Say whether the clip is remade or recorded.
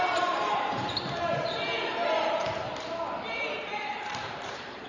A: remade